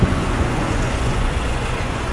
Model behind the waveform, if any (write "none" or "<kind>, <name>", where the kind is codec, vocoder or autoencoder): vocoder, Vocos